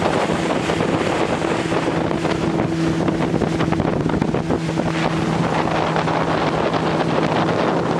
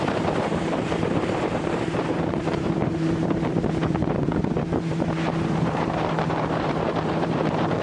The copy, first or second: second